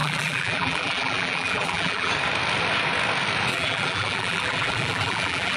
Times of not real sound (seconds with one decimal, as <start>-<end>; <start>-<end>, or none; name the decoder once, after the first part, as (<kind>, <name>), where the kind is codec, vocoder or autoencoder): 0.0-2.1 (vocoder, BigVGAN v2); 3.5-5.6